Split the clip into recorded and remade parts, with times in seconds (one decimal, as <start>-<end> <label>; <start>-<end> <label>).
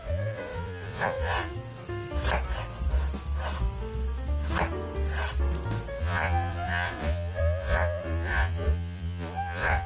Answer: 0.0-1.5 remade; 1.5-6.0 recorded; 6.0-9.9 remade